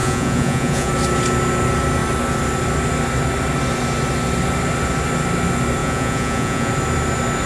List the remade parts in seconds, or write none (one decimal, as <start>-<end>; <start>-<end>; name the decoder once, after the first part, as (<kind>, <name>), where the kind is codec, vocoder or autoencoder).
0.0-0.9 (vocoder, Vocos); 5.8-6.7